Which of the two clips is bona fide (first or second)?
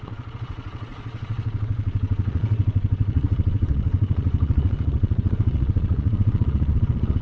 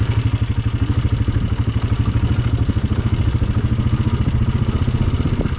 second